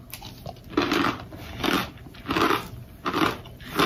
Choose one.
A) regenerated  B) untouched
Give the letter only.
B